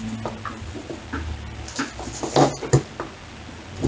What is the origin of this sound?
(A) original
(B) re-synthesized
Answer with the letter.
A